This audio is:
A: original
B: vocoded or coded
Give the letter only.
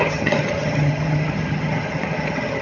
B